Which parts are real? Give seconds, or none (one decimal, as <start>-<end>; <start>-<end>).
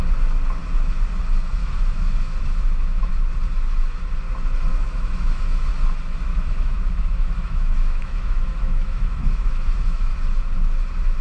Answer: 0.0-1.6; 3.1-4.7; 5.7-6.3; 10.1-11.2